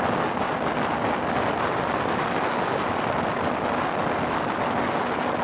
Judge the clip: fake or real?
real